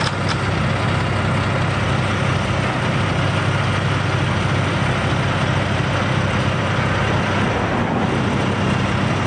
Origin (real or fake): real